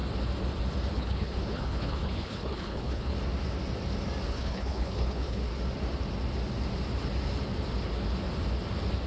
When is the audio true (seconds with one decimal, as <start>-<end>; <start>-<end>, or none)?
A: 0.0-0.9; 3.1-4.3; 5.5-9.1